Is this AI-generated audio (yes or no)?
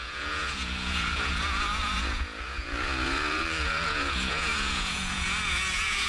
yes